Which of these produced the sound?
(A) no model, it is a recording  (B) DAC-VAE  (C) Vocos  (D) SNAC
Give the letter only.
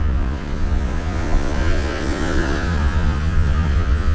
C